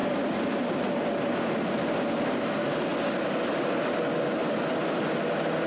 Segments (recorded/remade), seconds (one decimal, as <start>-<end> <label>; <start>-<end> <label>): 0.0-5.7 recorded